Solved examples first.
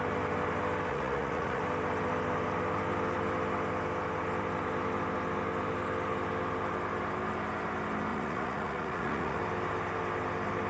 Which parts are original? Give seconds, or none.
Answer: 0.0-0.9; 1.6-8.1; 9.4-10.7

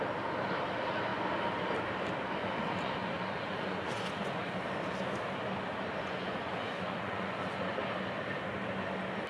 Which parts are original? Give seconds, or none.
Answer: 0.0-2.4; 4.5-6.0; 7.8-9.3

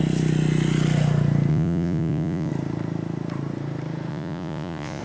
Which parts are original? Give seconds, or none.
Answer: 0.0-1.5; 2.5-4.1

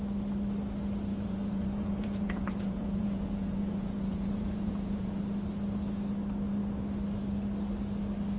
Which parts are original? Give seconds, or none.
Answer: 0.0-1.1; 5.2-8.4

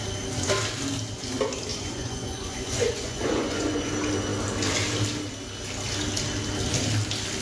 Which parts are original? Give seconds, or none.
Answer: 0.0-1.7; 3.9-7.4

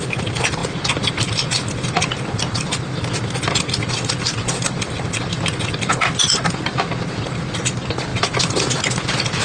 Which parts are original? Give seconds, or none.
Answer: 0.0-9.4